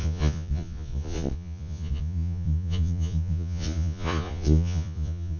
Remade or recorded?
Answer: remade